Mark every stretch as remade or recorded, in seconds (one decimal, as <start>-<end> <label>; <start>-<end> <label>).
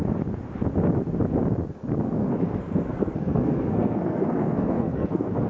0.0-2.2 recorded; 2.2-5.5 remade